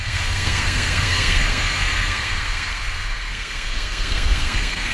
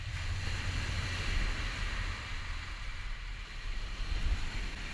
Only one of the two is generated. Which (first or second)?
first